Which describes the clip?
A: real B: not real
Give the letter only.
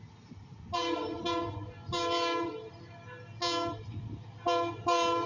A